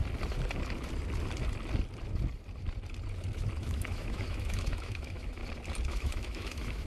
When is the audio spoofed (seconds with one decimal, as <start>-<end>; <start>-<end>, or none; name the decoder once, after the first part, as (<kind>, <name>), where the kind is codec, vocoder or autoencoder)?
3.6-5.4 (autoencoder, DAC-VAE); 5.9-6.9